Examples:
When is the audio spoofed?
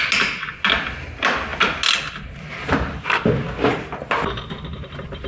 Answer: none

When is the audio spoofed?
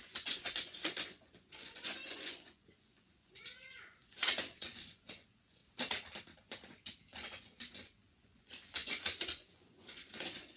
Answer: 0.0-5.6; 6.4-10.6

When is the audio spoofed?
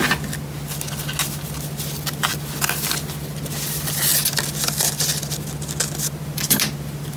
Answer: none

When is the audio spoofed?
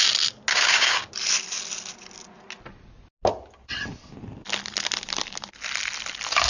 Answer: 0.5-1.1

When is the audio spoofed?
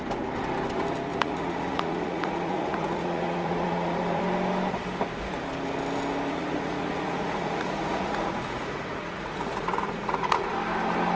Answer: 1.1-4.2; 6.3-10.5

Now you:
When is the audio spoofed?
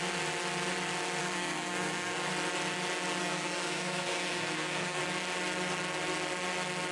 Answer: 1.2-2.3; 3.2-5.0